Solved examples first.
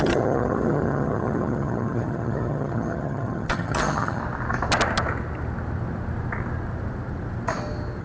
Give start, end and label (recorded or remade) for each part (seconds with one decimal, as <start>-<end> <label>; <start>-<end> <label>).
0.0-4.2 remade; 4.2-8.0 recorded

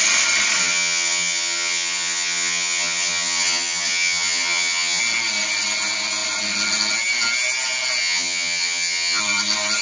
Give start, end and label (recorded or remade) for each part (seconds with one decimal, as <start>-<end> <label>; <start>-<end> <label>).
0.0-0.6 recorded; 0.6-5.0 remade; 5.0-8.0 recorded; 8.0-9.2 remade; 9.2-9.8 recorded

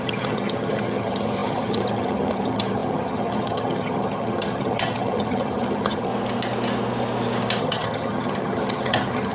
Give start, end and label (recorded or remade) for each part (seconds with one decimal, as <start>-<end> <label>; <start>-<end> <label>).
0.0-6.1 remade; 6.1-7.6 recorded; 7.6-9.3 remade